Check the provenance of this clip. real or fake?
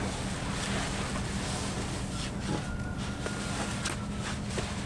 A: real